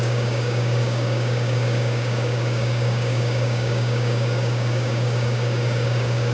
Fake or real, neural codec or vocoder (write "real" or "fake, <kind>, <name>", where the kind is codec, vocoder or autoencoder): fake, codec, DAC